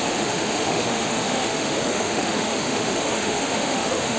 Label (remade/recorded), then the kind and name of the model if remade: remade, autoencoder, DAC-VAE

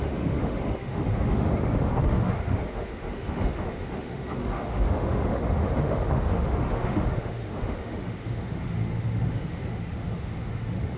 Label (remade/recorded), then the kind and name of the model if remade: remade, autoencoder, DAC-VAE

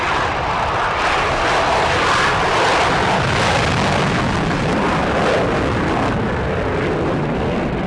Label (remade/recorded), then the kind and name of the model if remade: recorded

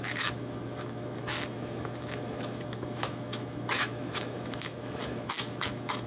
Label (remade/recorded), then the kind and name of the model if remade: remade, autoencoder, DAC-VAE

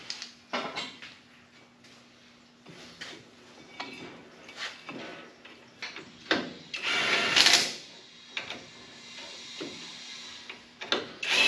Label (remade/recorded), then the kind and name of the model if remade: recorded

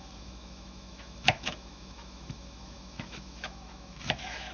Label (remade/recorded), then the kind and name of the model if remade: remade, autoencoder, DAC-VAE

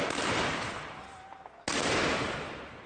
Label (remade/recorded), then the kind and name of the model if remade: recorded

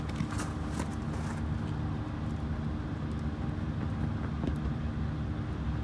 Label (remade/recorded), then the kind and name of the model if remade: recorded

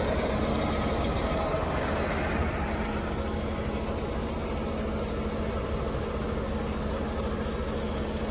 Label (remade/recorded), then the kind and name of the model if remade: recorded